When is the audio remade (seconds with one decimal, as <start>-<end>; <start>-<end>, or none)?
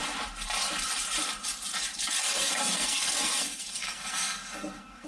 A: 2.2-5.1